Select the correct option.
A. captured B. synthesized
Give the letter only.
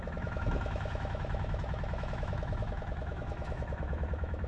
B